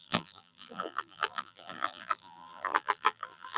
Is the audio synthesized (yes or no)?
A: yes